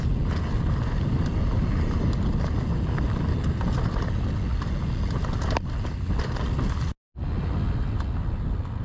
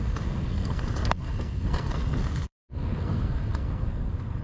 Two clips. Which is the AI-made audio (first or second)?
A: second